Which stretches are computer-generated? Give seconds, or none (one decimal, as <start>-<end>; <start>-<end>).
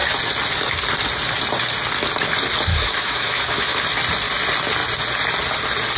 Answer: 2.7-3.8